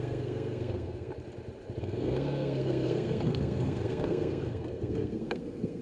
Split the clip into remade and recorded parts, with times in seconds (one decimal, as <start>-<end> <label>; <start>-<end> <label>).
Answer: 0.0-1.1 remade; 1.1-1.8 recorded; 1.8-5.8 remade